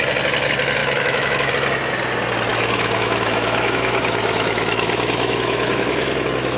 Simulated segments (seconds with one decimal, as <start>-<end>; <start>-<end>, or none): 0.8-1.5; 2.5-6.6